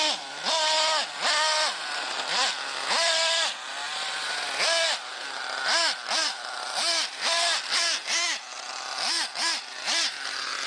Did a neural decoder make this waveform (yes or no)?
no